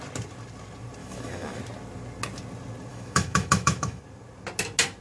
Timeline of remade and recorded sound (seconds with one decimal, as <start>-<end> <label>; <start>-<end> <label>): 0.0-1.0 recorded; 1.0-1.6 remade; 1.6-2.9 recorded; 2.9-4.0 remade; 4.0-5.0 recorded